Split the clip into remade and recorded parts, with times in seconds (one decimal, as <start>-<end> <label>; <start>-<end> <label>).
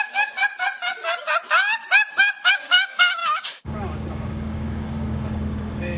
0.0-0.4 remade; 0.4-2.5 recorded; 2.5-6.0 remade